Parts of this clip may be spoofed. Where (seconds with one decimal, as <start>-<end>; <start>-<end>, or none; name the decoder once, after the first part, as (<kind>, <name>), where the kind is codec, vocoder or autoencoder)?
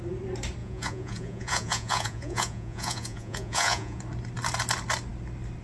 0.6-4.0 (vocoder, Vocos)